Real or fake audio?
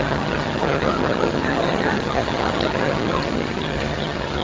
fake